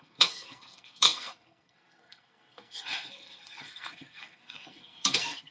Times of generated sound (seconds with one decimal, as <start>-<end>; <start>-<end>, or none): 0.0-5.5